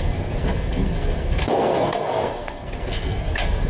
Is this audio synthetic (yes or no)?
yes